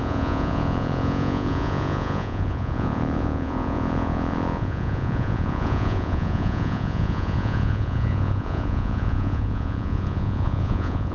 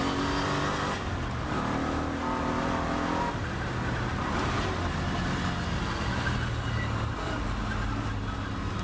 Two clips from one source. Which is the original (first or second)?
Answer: second